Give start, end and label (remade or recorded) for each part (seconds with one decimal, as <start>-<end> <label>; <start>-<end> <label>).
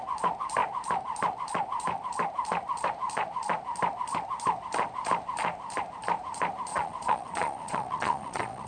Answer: 0.0-6.7 recorded; 6.7-8.7 remade